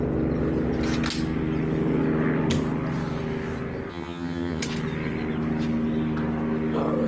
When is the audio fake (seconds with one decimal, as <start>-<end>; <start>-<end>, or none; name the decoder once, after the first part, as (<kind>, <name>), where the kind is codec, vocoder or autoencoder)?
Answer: 3.9-4.6 (vocoder, HiFi-GAN)